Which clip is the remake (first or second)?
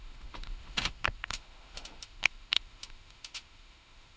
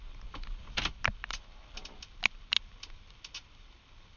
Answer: first